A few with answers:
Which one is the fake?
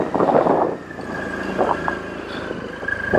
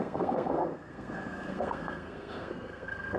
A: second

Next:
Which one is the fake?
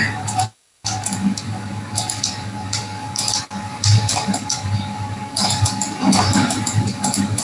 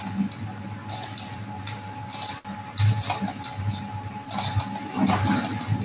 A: first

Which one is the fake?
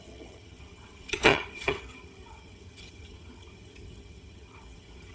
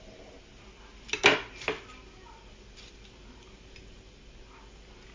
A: first